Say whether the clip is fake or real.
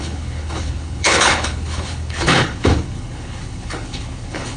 fake